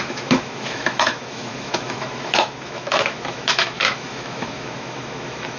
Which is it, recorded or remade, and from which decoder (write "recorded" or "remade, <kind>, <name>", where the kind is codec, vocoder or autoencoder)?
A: remade, autoencoder, DAC-VAE